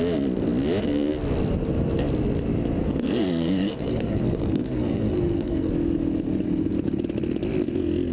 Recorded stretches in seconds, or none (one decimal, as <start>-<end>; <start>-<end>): 0.0-2.8; 5.7-8.1